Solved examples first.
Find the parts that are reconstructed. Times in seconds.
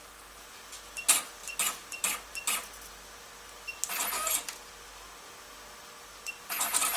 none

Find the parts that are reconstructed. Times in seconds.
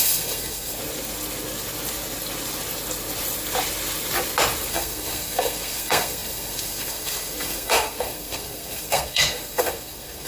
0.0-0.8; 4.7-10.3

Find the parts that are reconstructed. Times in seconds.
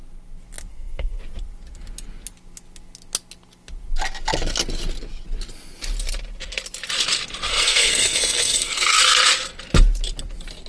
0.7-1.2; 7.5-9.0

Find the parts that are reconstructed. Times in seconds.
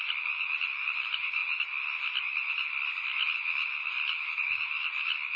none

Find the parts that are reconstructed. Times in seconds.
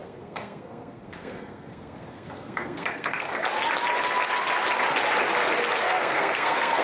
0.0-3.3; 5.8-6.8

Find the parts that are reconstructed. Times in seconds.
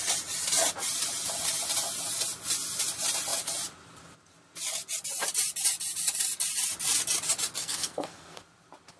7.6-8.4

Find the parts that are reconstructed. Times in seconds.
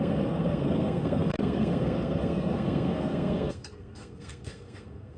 0.0-5.2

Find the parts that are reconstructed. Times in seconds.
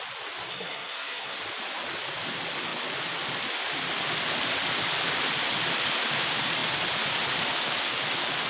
0.5-1.4